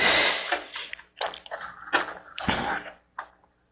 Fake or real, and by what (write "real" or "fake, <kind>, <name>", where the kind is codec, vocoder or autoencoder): real